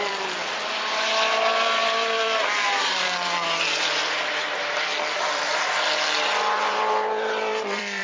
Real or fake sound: fake